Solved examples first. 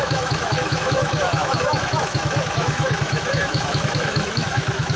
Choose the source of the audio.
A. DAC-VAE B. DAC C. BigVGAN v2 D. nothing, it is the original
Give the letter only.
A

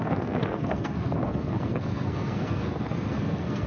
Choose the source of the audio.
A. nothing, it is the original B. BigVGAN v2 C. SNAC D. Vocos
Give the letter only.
C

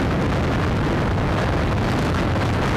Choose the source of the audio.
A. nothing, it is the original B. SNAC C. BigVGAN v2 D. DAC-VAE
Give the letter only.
A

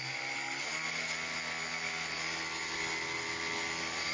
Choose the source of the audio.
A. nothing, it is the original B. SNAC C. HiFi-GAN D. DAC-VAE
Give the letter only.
A